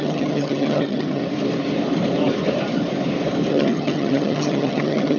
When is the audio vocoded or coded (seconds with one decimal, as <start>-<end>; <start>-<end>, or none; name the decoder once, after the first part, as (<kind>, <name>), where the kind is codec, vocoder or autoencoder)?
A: 0.0-1.2 (vocoder, HiFi-GAN); 3.5-5.2